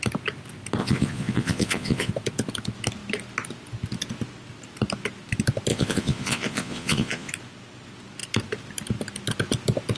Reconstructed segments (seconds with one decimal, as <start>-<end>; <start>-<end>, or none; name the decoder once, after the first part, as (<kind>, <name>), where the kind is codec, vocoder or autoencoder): 0.8-2.1 (vocoder, Vocos); 5.7-7.3